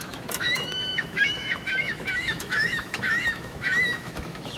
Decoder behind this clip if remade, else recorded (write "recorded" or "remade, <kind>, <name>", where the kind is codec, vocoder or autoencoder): remade, autoencoder, DAC-VAE